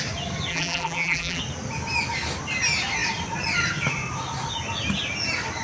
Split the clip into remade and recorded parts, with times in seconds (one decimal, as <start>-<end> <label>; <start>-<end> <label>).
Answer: 0.0-0.5 recorded; 0.5-1.4 remade; 1.4-5.6 recorded